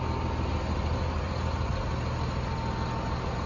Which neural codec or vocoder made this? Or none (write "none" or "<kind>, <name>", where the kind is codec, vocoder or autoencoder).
none